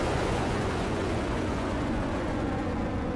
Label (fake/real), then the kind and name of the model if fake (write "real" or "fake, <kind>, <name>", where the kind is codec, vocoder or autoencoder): fake, vocoder, Vocos